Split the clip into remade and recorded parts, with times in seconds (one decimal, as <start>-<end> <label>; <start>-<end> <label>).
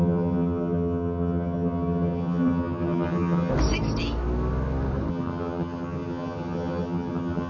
0.0-3.5 remade; 3.5-5.1 recorded; 5.1-7.5 remade